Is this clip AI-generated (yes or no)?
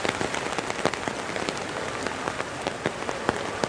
no